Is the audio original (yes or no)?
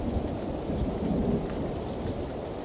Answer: yes